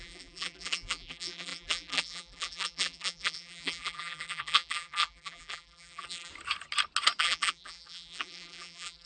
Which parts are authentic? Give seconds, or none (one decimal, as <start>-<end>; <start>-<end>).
6.3-7.2